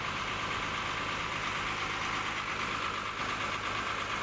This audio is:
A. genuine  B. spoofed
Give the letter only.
A